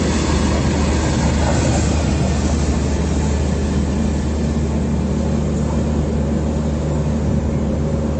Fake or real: real